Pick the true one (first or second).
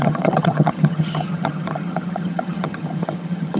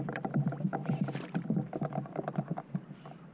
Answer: second